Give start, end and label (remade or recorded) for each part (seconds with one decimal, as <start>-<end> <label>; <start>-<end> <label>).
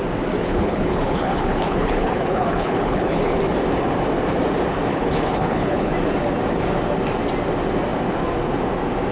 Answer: 0.0-0.4 recorded; 0.4-3.4 remade; 3.4-4.9 recorded; 4.9-5.9 remade; 5.9-9.1 recorded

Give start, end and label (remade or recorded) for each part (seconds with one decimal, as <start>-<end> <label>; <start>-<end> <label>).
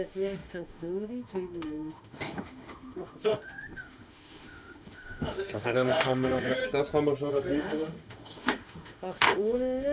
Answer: 0.0-6.6 remade; 6.6-7.3 recorded; 7.3-9.9 remade